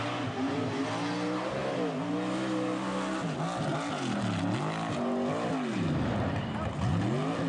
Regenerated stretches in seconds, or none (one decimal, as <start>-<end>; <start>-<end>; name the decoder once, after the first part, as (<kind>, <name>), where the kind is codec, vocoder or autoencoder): none